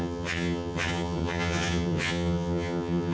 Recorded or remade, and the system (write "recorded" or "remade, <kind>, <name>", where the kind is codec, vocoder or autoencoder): remade, vocoder, HiFi-GAN